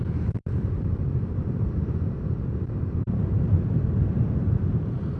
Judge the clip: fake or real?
fake